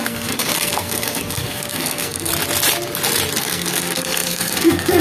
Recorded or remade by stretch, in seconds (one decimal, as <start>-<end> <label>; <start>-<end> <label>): 0.0-2.3 remade; 2.3-3.4 recorded; 3.4-5.0 remade